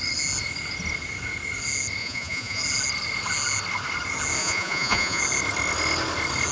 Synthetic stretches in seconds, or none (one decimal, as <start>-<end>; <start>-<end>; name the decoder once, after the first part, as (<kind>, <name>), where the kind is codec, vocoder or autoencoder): 2.0-2.6 (vocoder, Vocos); 4.4-5.2